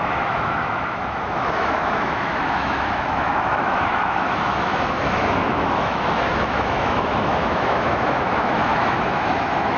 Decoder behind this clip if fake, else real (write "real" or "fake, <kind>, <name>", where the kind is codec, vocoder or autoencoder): fake, autoencoder, DAC-VAE